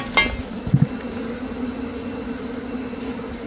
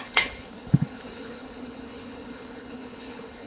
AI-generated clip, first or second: second